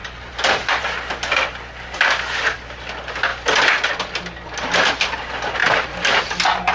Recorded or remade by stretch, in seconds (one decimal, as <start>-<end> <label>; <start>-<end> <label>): 0.0-0.8 remade; 0.8-5.6 recorded; 5.6-6.2 remade; 6.2-6.7 recorded